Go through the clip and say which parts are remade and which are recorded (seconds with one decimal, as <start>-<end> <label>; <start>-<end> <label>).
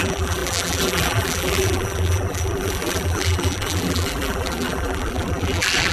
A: 0.0-5.9 remade